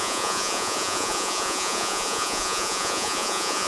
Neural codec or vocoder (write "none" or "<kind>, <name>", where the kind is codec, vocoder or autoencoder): vocoder, Vocos